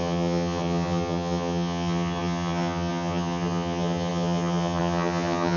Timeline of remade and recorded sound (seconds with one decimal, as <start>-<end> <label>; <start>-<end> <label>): 0.0-5.6 remade